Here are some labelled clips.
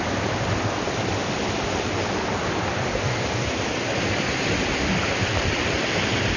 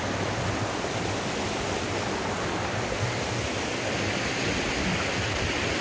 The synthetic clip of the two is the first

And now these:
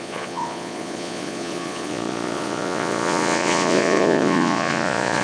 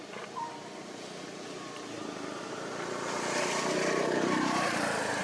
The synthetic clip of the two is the first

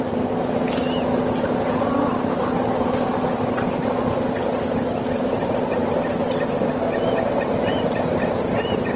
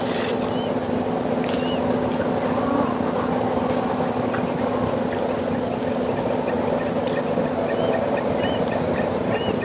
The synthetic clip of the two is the first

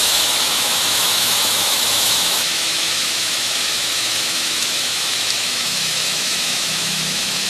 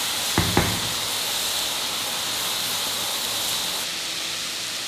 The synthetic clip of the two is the first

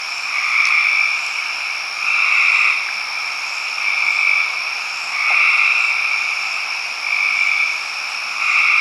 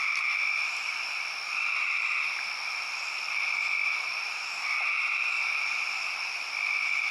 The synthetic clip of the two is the second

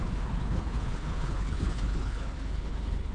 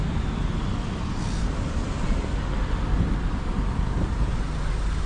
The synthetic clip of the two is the first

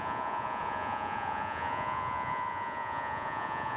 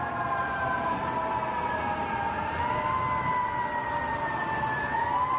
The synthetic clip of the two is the first